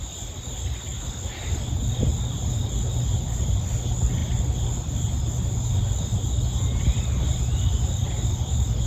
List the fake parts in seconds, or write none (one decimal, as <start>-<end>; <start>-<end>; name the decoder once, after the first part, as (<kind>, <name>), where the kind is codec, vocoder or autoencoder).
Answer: none